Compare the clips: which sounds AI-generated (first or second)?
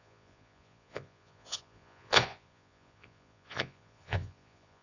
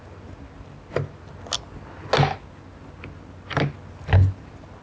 first